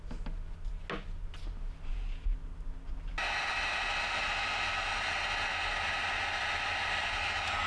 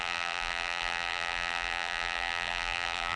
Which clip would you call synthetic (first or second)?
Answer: second